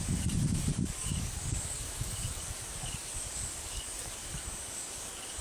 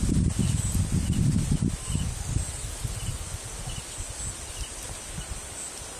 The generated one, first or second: first